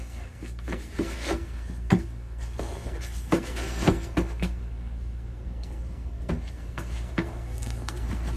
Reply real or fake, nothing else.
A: fake